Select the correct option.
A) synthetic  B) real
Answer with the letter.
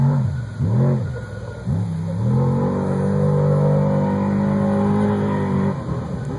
B